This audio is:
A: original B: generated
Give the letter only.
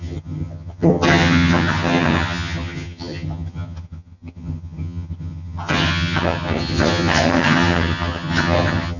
B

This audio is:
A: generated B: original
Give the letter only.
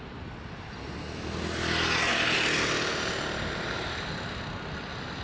B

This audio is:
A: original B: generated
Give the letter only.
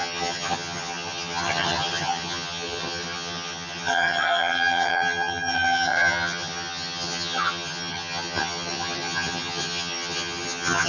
B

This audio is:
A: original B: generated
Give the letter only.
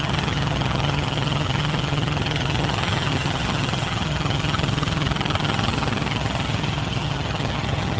B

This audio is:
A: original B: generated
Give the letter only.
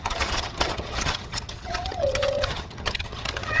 B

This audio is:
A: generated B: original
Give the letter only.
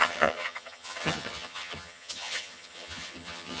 A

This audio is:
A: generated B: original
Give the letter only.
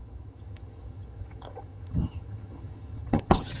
A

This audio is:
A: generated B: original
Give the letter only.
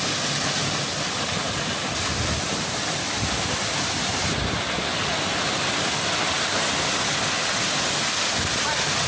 B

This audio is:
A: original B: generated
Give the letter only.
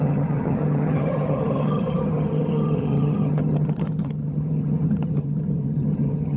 B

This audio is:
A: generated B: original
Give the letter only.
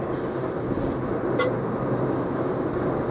B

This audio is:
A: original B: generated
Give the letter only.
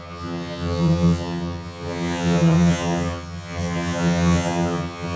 B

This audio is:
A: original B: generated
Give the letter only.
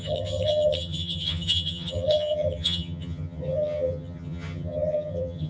B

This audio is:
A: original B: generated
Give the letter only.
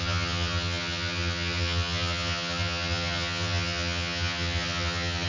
B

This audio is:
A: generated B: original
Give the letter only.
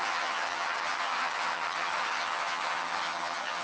A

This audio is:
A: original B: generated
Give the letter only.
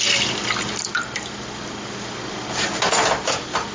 A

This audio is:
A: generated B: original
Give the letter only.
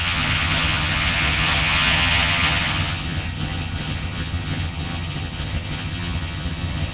A